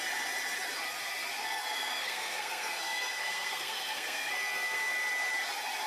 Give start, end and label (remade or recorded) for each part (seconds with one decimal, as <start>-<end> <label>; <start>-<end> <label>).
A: 0.0-1.4 recorded; 1.4-4.9 remade; 4.9-5.9 recorded